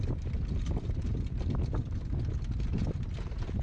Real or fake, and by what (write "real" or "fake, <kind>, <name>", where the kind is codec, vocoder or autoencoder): real